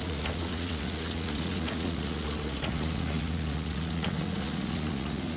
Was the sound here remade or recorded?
remade